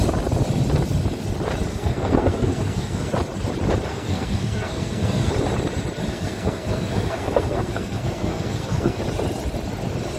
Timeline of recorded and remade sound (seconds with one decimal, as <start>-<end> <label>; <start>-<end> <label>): 0.0-1.7 recorded; 1.7-3.1 remade; 3.1-3.9 recorded; 3.9-5.3 remade; 5.3-6.1 recorded; 6.1-9.0 remade; 9.0-10.2 recorded